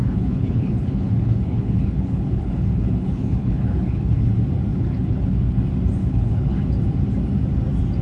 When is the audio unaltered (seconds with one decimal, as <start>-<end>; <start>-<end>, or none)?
4.3-4.7; 5.6-6.0; 6.6-8.0

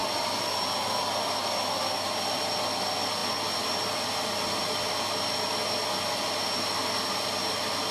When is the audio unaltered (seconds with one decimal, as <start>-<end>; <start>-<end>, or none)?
0.0-7.9